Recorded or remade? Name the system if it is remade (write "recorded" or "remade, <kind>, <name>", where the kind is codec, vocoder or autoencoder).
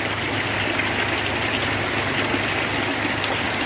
recorded